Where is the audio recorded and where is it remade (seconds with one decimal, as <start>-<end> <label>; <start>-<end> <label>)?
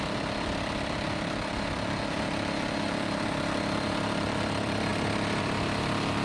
0.0-6.2 recorded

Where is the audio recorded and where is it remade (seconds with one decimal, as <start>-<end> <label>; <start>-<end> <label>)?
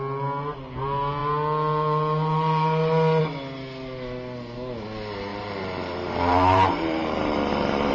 0.0-5.3 recorded; 5.3-7.9 remade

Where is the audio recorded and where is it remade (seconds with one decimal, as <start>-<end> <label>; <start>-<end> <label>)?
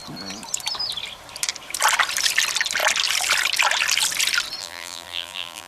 0.0-4.6 recorded; 4.6-5.7 remade